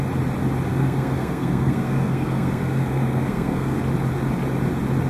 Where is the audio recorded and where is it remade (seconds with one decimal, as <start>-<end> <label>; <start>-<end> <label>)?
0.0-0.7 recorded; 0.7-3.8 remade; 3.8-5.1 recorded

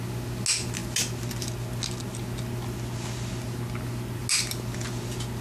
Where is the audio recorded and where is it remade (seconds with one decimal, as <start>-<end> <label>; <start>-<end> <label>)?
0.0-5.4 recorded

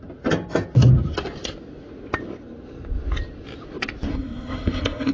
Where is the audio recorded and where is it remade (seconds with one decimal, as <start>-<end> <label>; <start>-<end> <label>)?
0.0-4.1 recorded; 4.1-5.1 remade